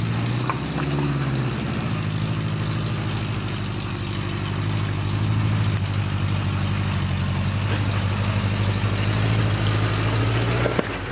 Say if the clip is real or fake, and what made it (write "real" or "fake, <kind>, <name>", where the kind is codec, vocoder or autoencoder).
real